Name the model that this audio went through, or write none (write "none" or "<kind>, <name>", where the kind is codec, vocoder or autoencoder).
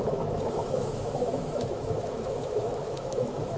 autoencoder, DAC-VAE